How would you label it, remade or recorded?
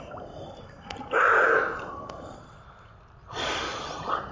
recorded